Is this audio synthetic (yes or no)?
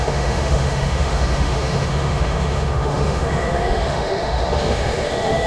yes